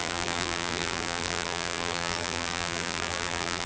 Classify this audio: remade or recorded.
remade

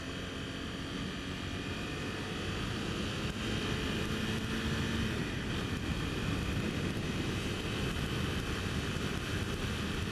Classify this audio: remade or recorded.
recorded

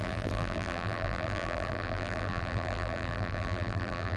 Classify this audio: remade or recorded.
remade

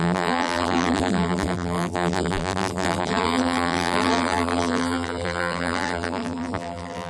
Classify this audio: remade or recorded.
remade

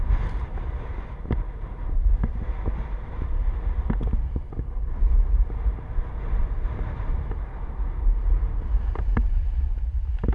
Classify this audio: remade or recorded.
remade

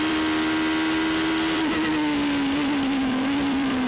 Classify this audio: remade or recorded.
remade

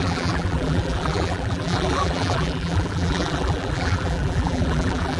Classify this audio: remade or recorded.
remade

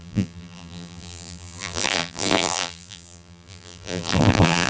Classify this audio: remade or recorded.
remade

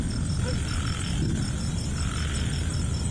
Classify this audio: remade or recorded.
recorded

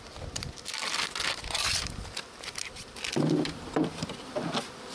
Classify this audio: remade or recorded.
recorded